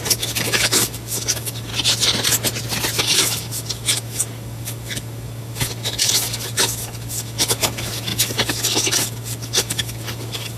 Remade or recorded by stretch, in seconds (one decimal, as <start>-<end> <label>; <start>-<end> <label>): 0.0-1.7 remade; 1.7-3.0 recorded; 3.0-10.6 remade